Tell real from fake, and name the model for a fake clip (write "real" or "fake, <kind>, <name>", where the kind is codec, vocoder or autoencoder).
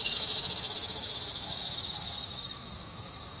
fake, autoencoder, DAC-VAE